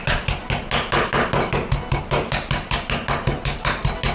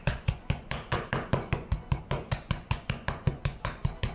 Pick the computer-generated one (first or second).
second